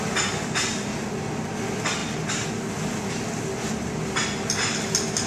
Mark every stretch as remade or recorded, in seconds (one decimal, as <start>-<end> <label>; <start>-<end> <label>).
0.0-5.3 recorded